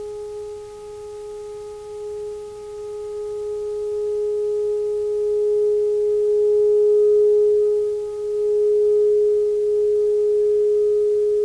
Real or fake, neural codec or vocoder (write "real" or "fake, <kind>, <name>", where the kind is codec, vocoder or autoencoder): real